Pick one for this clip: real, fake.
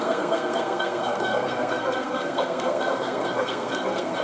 fake